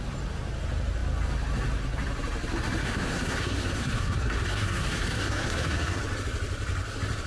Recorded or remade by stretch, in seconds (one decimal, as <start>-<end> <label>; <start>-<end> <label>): 0.0-2.8 recorded; 2.8-6.0 remade; 6.0-7.3 recorded